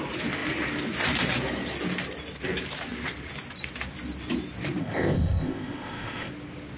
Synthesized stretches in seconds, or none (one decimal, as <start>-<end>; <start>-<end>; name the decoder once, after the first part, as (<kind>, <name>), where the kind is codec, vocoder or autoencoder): 4.8-6.3 (codec, ZipCodec)